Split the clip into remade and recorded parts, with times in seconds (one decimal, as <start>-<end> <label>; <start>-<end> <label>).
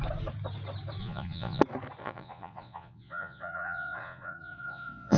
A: 0.0-1.0 recorded; 1.0-1.6 remade; 1.6-2.0 recorded; 2.0-5.2 remade